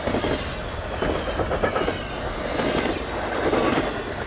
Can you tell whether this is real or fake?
real